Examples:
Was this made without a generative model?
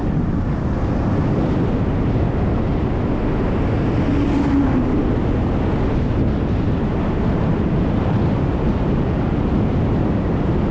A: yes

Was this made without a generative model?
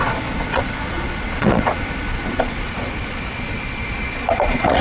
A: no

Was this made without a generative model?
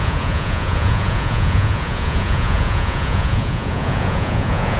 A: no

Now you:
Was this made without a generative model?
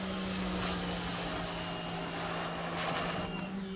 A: yes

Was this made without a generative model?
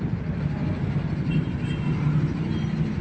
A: yes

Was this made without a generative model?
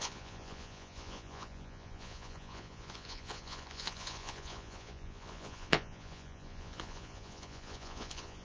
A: no